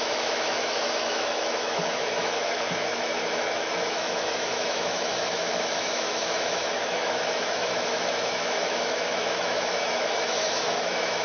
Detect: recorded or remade remade